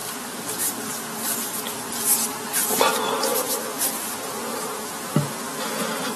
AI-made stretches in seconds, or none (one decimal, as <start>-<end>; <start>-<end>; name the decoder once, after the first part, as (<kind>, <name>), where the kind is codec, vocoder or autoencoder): none